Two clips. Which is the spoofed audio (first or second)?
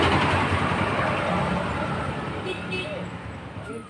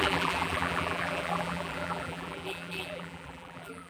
second